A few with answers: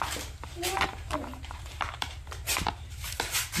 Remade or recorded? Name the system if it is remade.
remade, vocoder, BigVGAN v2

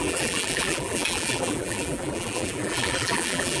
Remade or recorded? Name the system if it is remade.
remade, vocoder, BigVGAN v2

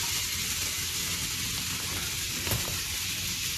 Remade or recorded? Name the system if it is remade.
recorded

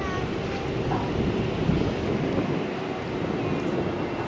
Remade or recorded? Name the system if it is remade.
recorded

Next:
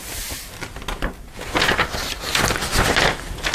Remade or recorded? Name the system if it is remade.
recorded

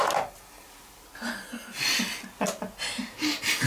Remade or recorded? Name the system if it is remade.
recorded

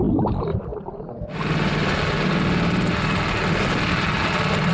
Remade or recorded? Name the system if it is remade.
recorded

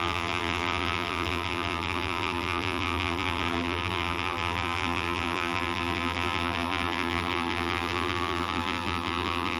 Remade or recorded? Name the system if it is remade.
remade, vocoder, BigVGAN v2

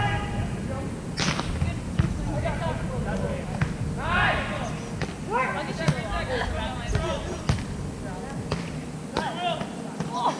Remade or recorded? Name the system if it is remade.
recorded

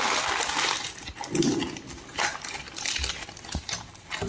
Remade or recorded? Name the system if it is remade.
recorded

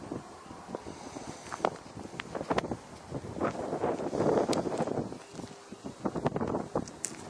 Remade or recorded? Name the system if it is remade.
recorded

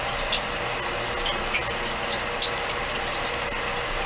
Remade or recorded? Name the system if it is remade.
recorded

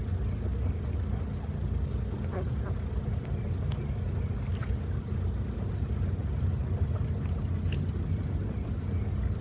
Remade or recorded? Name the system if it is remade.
recorded